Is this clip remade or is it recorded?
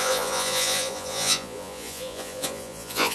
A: remade